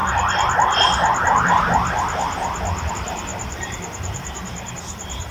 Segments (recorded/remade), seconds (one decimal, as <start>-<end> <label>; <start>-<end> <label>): 0.0-2.9 recorded; 2.9-5.3 remade